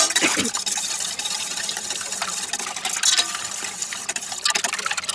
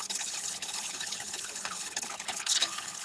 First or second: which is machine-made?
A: second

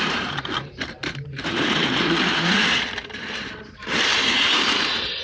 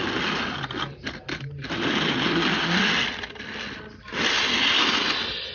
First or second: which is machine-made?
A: first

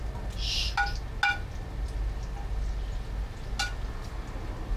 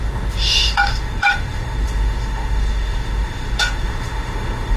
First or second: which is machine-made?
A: second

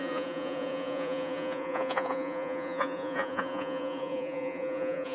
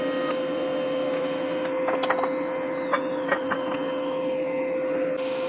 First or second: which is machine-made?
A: first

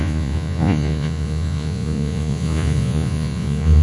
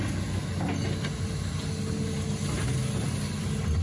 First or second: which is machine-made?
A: first